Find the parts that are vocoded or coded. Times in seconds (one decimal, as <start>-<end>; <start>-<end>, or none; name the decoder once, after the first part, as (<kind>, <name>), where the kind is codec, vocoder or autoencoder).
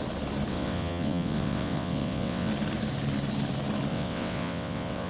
0.5-2.5 (vocoder, WaveNeXt); 3.9-5.1